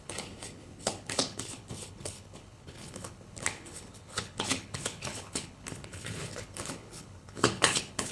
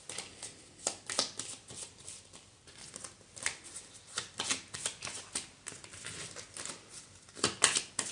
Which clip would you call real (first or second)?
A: second